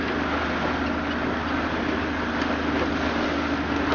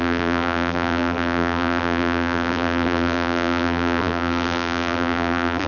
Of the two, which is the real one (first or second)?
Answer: first